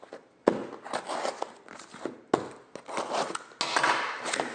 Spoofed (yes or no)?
no